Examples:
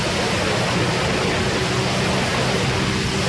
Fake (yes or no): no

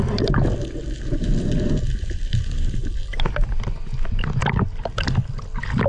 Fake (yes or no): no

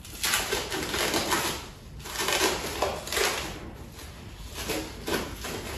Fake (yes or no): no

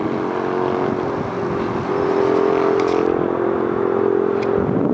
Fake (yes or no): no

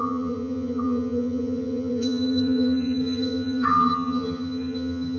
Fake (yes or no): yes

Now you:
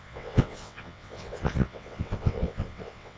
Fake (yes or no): yes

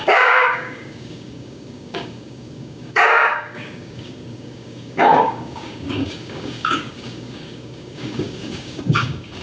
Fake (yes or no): yes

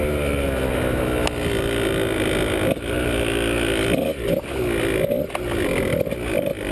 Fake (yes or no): no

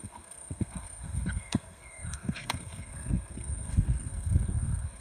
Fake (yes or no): yes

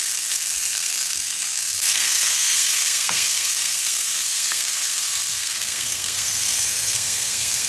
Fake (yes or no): yes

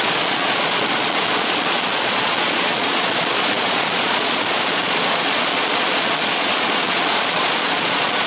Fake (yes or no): yes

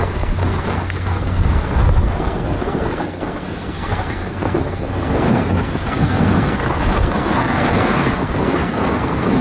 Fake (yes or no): yes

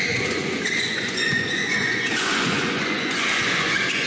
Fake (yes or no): yes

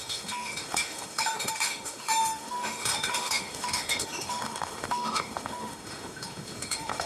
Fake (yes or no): yes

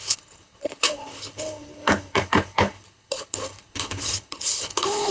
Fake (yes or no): yes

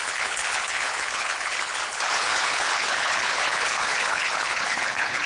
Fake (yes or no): yes